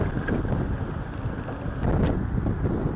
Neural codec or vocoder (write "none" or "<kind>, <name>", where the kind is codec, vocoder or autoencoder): none